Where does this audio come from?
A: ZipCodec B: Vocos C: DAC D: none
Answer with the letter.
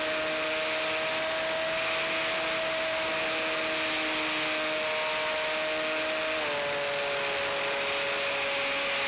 D